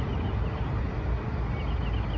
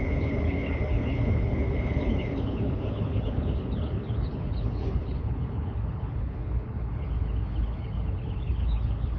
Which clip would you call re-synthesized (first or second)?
second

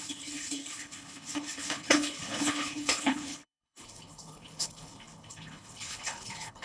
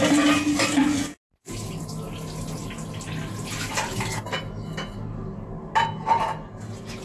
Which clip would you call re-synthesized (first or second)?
first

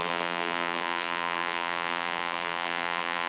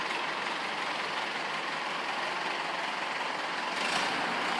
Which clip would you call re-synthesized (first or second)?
first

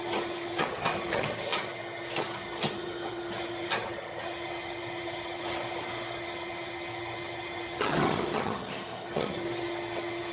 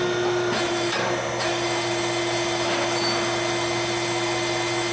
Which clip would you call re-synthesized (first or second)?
first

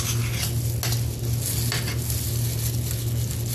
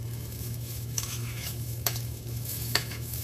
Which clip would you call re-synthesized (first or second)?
second